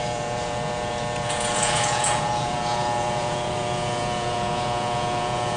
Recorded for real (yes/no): no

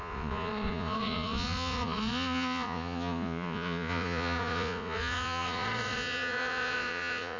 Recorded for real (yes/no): no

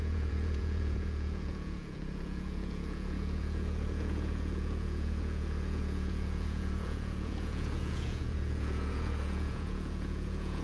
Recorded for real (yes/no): no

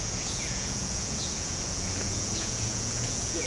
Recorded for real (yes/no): no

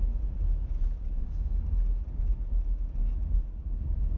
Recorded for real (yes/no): yes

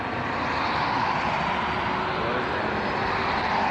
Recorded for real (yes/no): yes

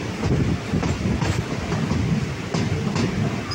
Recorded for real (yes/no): yes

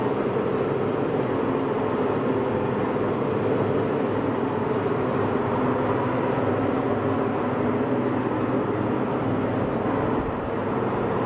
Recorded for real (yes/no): yes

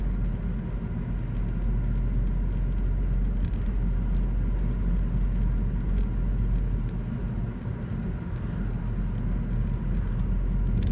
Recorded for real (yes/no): yes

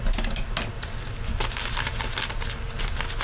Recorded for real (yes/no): yes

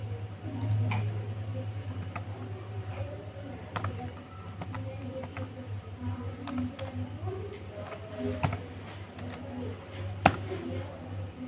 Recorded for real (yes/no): yes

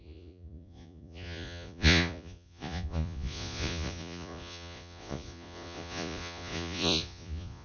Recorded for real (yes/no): no